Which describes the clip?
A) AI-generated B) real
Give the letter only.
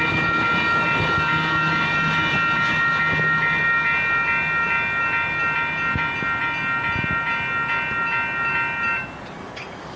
B